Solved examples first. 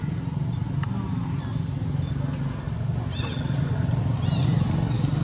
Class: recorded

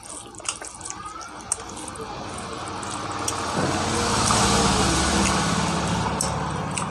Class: recorded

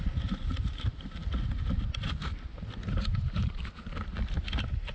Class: recorded